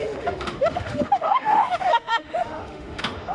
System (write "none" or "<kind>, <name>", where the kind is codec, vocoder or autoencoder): autoencoder, DAC-VAE